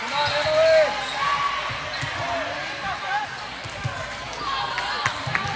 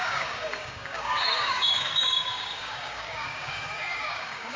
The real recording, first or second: first